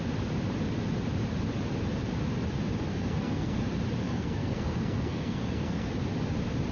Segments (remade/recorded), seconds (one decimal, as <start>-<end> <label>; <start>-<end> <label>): 0.0-2.9 recorded; 2.9-3.6 remade; 3.6-4.0 recorded; 4.0-5.9 remade; 5.9-6.7 recorded